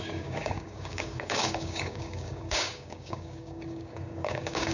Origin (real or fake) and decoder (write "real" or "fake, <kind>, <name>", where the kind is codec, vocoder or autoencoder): fake, codec, DAC